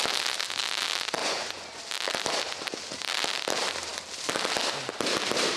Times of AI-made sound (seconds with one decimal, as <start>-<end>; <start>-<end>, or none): 1.2-1.8